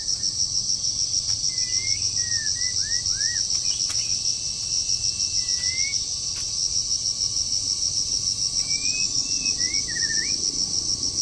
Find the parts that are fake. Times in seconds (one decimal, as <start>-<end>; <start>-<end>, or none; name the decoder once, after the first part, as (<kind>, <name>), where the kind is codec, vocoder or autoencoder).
none